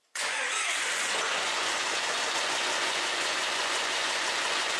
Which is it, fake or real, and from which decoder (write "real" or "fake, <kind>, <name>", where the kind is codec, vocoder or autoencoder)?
fake, vocoder, Vocos